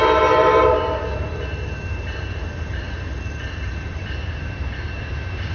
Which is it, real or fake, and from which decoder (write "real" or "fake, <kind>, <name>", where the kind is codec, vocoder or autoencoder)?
fake, vocoder, BigVGAN v2